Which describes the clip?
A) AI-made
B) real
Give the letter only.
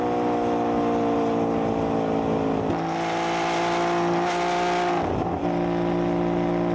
B